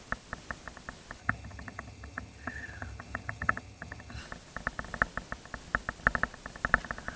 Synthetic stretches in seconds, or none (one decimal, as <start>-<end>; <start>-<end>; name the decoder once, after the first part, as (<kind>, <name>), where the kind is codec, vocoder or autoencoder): 1.2-4.2 (vocoder, HiFi-GAN)